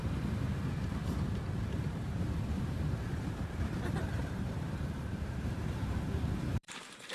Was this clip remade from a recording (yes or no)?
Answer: yes